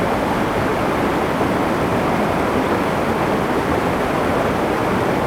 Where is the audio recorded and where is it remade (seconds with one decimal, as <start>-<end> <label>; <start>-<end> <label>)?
0.0-1.9 recorded; 1.9-5.3 remade